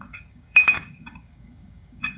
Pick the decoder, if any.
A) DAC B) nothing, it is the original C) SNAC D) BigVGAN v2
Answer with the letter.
A